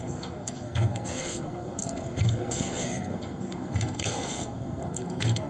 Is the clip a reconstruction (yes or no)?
yes